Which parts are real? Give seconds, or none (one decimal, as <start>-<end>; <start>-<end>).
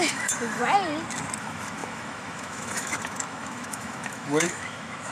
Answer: 0.6-1.4